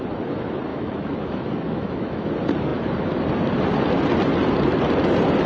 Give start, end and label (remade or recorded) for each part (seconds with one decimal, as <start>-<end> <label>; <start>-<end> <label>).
0.0-0.7 recorded; 0.7-2.3 remade; 2.3-5.5 recorded